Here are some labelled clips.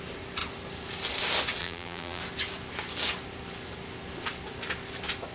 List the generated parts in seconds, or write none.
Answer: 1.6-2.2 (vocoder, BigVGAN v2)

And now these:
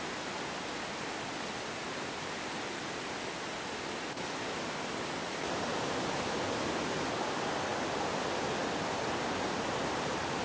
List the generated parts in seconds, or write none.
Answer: 5.2-7.1 (vocoder, BigVGAN v2)